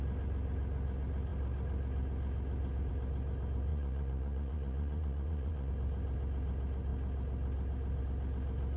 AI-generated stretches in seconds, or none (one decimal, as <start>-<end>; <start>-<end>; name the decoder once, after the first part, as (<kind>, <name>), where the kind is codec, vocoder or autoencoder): 3.7-5.7 (vocoder, Vocos)